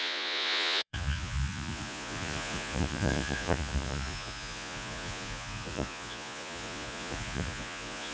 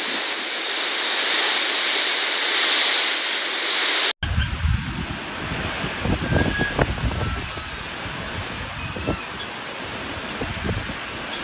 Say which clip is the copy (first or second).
first